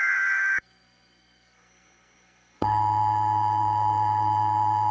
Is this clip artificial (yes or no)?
yes